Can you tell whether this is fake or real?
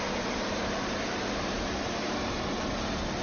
fake